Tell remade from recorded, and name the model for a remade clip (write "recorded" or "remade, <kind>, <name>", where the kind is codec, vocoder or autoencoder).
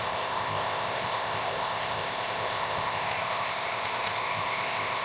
remade, codec, ZipCodec